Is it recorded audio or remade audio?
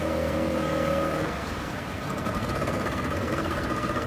remade